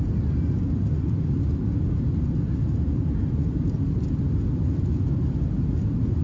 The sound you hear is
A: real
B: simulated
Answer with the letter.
A